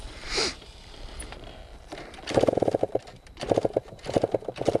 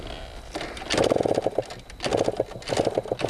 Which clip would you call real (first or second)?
second